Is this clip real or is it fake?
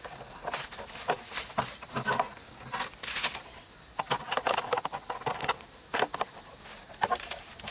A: real